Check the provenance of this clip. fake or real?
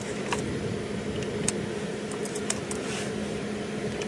real